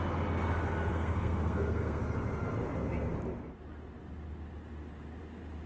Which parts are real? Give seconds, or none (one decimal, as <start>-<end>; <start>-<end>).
0.0-0.9; 2.0-5.7